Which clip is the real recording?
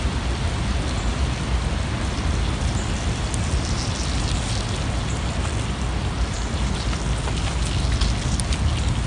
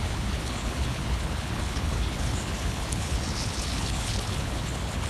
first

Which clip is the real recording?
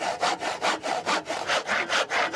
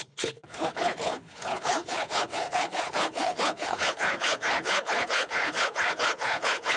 first